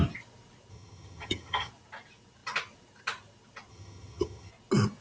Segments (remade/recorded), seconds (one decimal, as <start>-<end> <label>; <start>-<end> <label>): 0.0-0.7 recorded; 0.7-1.7 remade; 1.7-3.7 recorded; 3.7-4.5 remade; 4.5-5.0 recorded